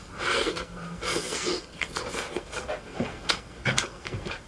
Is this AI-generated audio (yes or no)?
yes